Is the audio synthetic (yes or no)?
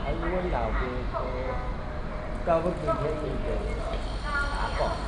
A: no